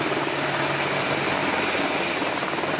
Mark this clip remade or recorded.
recorded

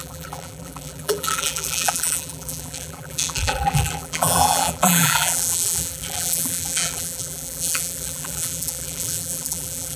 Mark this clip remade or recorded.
remade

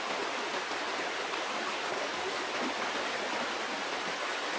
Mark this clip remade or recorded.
recorded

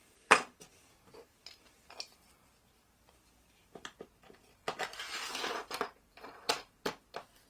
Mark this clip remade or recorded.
remade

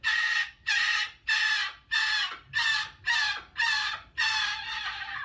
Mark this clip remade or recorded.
recorded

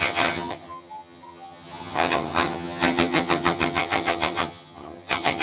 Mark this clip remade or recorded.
remade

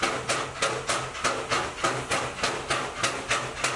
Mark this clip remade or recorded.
recorded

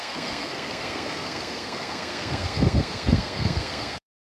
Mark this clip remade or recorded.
remade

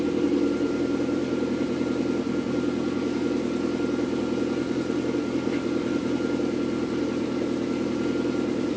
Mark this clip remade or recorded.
recorded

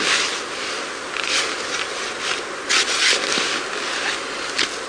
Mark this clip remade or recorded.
recorded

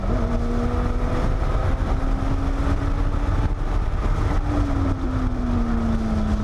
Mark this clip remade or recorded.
recorded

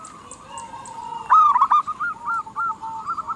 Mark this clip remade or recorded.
recorded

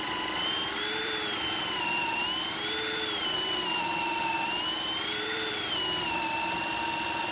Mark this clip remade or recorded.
remade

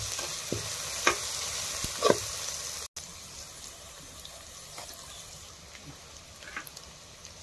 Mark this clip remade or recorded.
recorded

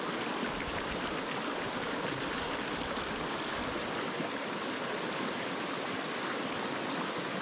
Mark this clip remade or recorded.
recorded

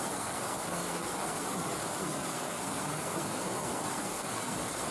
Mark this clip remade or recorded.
remade